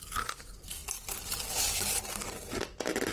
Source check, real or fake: real